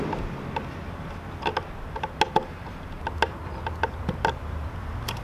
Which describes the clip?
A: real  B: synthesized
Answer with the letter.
A